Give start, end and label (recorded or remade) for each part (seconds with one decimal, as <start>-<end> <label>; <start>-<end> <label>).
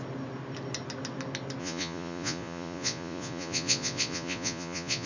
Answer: 0.0-1.6 recorded; 1.6-5.1 remade